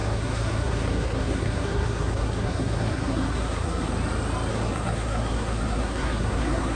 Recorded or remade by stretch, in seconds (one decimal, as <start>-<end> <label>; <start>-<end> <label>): 0.0-3.9 remade; 3.9-4.5 recorded; 4.5-6.8 remade

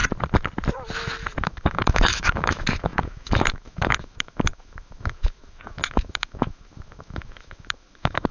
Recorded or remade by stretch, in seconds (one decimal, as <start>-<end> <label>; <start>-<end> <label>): 0.0-1.4 recorded; 1.4-8.3 remade

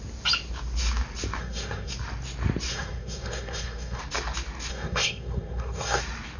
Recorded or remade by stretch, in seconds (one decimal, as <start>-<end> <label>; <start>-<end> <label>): 0.0-1.4 recorded; 1.4-1.9 remade; 1.9-2.7 recorded; 2.7-4.0 remade; 4.0-4.7 recorded; 4.7-6.0 remade; 6.0-6.4 recorded

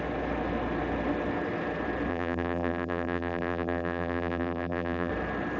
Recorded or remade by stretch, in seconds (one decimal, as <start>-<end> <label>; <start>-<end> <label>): 0.0-2.1 recorded; 2.1-5.1 remade; 5.1-5.6 recorded